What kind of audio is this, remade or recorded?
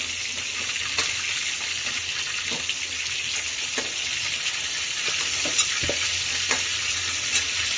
recorded